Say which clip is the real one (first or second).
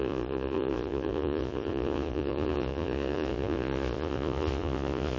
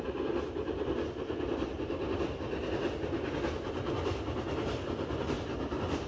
second